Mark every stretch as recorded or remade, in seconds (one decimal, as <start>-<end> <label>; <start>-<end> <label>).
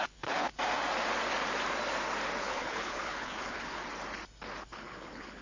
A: 0.0-0.5 remade; 0.5-2.4 recorded; 2.4-3.8 remade; 3.8-4.6 recorded; 4.6-5.4 remade